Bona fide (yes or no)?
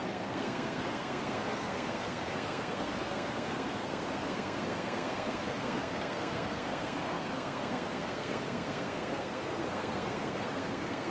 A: no